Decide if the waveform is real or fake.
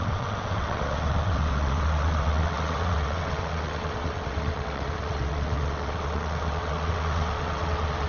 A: fake